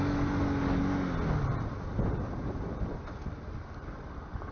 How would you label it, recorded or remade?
recorded